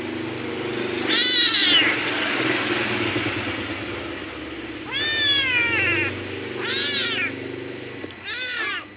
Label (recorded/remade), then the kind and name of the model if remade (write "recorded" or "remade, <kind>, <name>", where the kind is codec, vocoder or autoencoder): recorded